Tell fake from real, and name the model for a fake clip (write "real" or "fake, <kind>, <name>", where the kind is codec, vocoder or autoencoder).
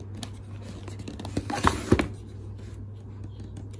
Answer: real